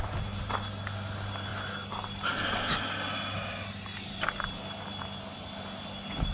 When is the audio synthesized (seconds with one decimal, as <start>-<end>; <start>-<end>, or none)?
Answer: none